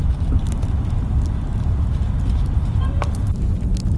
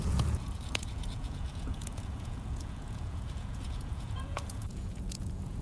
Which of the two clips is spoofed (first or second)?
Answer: second